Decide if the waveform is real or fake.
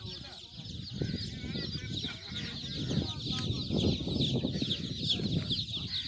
real